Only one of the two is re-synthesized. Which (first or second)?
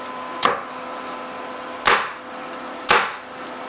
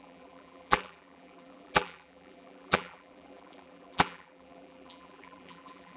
second